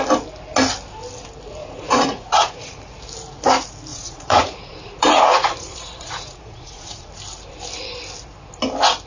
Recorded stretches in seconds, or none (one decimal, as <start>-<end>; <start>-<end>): 0.0-1.6; 2.8-3.9; 7.1-9.1